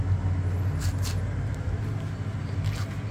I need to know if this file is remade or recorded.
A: recorded